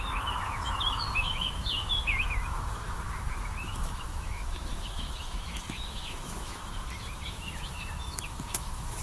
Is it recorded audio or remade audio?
remade